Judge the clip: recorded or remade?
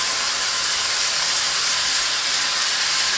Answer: recorded